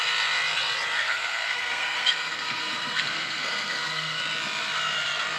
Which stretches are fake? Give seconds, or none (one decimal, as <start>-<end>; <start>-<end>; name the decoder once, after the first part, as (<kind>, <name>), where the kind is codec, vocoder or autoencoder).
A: 1.0-4.2 (codec, SNAC)